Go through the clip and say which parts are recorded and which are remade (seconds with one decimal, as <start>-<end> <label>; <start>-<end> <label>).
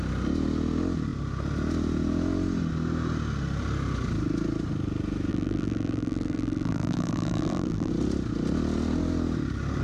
0.0-5.3 recorded; 5.3-7.9 remade; 7.9-9.8 recorded